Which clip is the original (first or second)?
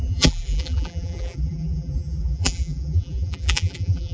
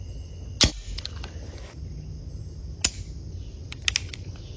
second